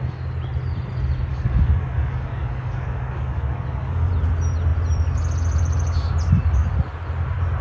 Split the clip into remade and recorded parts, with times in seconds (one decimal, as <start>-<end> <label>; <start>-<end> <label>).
0.0-1.3 recorded; 1.3-4.1 remade; 4.1-7.6 recorded